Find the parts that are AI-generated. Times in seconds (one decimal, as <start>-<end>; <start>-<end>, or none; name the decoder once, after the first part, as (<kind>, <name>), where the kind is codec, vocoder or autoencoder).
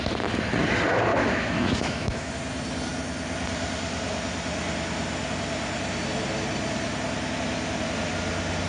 1.1-2.3 (autoencoder, DAC-VAE)